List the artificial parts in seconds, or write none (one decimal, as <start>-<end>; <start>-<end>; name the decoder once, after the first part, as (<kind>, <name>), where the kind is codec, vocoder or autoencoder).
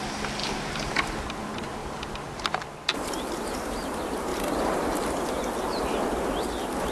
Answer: 4.3-5.2 (vocoder, BigVGAN v2)